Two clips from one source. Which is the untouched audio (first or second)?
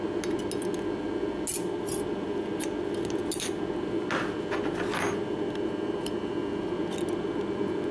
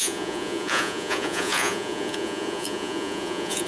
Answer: first